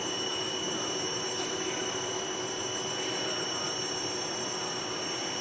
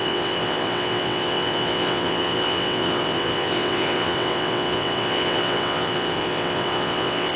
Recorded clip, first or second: first